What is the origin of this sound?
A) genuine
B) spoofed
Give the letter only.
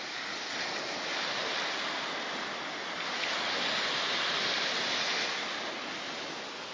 A